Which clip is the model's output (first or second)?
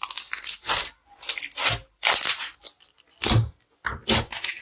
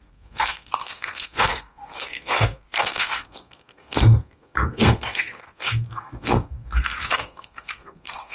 second